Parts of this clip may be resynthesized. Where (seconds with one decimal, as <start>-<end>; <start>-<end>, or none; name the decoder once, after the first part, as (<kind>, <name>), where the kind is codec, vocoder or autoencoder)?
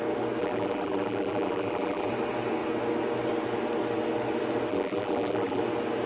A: 0.4-2.1 (vocoder, BigVGAN v2); 4.7-5.6